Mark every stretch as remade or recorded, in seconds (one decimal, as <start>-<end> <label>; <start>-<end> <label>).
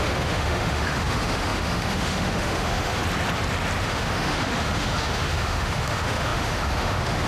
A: 0.0-3.0 remade; 3.0-3.8 recorded; 3.8-7.3 remade